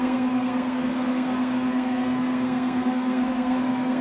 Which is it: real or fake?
fake